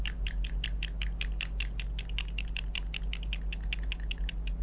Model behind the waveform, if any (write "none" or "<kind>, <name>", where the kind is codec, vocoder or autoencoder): none